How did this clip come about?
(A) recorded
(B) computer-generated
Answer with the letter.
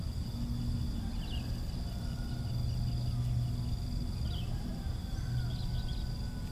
A